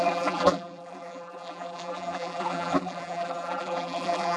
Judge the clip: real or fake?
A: fake